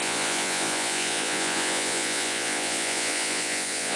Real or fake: fake